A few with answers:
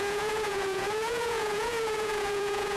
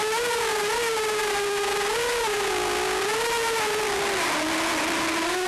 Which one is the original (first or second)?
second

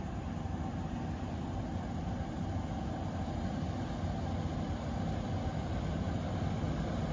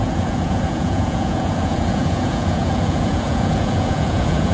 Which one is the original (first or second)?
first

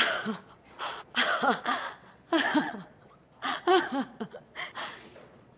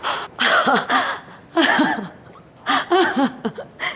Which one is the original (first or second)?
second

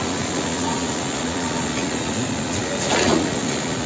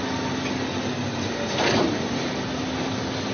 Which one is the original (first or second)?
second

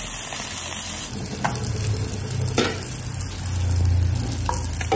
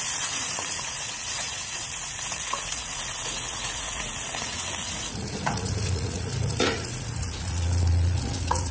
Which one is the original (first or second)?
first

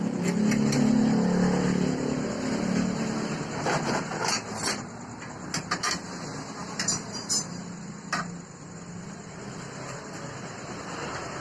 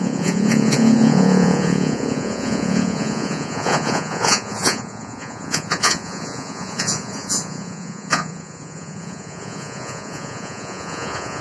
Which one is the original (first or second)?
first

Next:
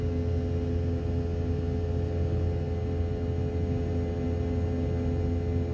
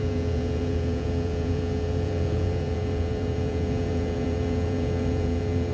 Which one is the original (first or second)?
first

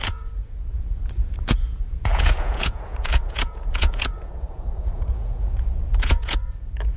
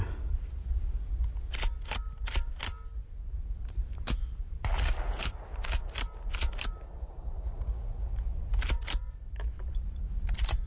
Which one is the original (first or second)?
second